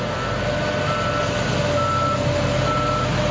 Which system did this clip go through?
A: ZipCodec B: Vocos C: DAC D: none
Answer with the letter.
D